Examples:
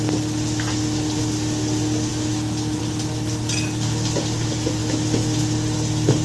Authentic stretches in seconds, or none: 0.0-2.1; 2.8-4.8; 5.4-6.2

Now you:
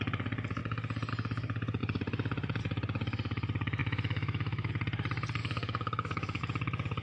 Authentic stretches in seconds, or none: 0.0-3.8; 4.7-5.4; 6.4-7.0

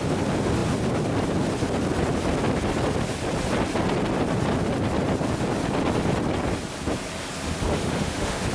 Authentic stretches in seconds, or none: 0.0-7.7

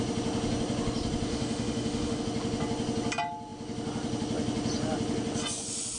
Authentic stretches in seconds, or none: 0.0-1.3; 2.2-6.0

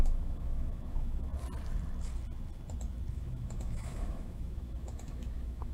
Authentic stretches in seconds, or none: 1.3-3.1